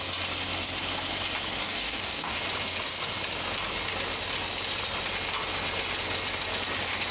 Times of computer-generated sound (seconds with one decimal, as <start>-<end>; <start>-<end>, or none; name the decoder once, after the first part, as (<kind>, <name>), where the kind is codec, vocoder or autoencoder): 1.6-2.4 (codec, DAC)